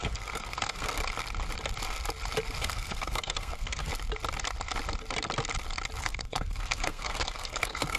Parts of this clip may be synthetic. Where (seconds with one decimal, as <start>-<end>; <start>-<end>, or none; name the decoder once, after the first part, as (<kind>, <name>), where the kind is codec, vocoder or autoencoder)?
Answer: 0.0-1.0 (codec, SNAC); 2.6-3.9; 6.0-8.0